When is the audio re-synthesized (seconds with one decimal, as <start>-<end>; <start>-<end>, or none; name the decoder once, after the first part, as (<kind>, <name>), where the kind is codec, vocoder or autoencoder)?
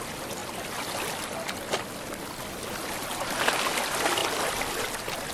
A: none